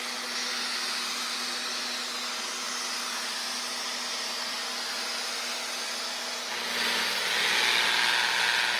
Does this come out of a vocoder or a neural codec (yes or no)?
no